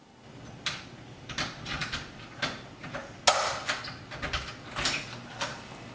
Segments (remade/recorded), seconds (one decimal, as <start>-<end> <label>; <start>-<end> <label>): 0.0-5.9 recorded